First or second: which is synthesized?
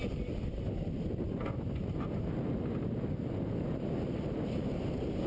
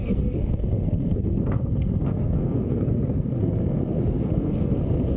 second